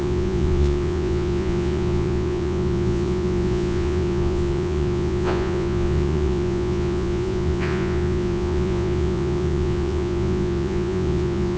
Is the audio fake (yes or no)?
yes